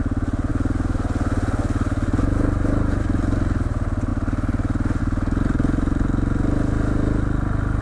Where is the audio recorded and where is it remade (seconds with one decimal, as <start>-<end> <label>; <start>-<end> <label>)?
0.0-7.8 recorded